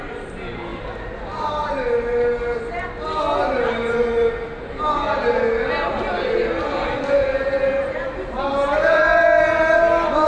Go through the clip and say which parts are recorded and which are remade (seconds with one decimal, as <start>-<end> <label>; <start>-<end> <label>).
0.0-10.3 recorded